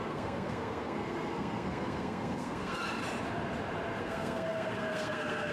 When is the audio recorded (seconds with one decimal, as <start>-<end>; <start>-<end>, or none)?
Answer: 2.8-4.0